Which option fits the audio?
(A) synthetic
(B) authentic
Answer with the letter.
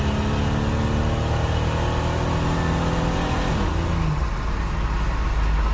B